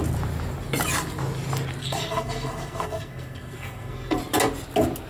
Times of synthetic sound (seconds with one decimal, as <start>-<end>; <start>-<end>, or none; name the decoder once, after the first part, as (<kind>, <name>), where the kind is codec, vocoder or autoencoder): 1.8-4.2 (codec, SNAC)